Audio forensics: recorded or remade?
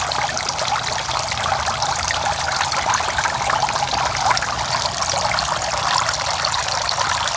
recorded